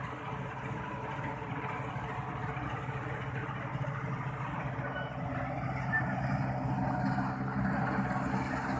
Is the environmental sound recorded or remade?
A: recorded